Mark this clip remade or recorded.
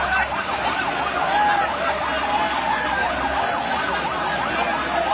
recorded